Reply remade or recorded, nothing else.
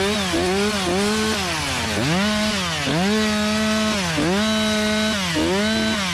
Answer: recorded